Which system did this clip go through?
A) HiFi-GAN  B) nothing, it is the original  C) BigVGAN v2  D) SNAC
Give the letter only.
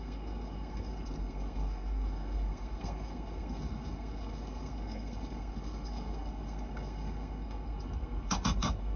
D